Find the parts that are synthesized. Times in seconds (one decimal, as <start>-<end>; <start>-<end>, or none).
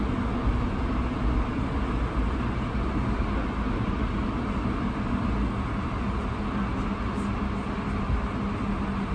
none